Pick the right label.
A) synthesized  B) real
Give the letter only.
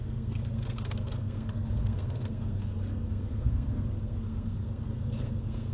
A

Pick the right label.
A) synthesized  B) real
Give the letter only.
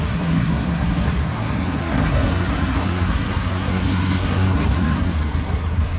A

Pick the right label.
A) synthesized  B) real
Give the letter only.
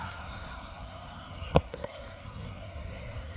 A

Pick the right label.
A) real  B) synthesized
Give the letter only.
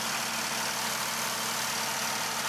A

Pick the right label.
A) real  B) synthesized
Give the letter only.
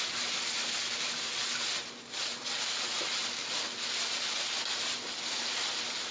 A